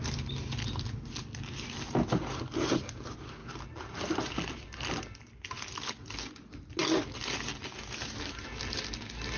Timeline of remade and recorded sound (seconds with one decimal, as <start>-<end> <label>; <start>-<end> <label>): 0.0-9.4 recorded